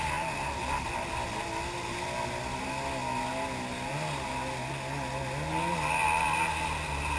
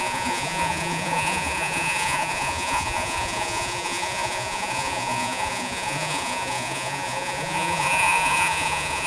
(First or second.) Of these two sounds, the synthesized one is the second